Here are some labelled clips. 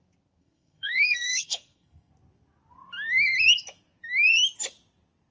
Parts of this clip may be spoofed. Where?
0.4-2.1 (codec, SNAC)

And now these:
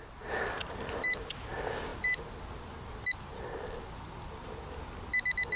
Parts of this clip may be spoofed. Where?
none

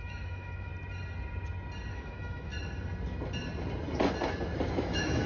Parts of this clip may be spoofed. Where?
0.0-0.7 (autoencoder, DAC-VAE); 1.9-2.5; 4.7-5.3

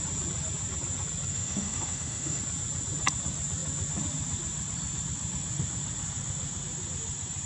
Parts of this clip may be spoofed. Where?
1.3-2.4 (autoencoder, DAC-VAE)